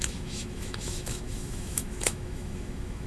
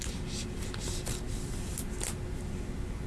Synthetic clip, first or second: first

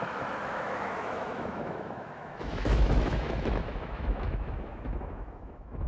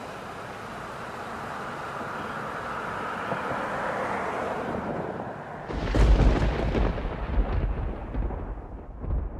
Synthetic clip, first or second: first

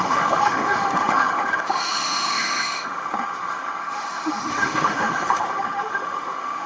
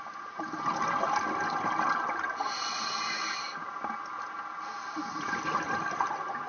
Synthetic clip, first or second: first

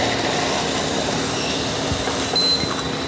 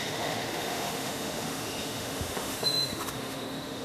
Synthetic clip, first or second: second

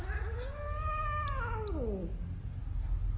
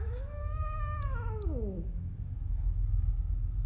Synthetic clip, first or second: second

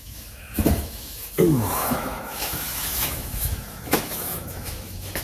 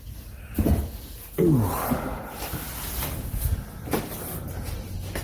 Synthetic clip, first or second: first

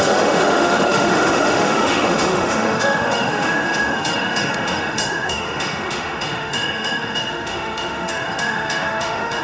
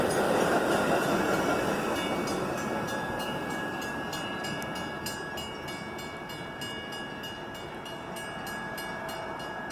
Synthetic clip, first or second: first